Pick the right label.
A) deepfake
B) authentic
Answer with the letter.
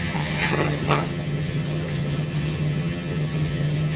A